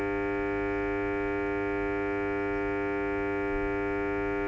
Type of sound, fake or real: real